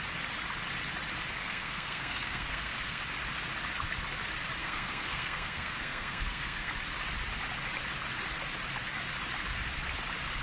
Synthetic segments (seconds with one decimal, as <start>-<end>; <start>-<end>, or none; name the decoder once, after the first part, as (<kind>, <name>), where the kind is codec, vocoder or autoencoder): 1.4-3.0 (codec, SNAC); 4.6-6.7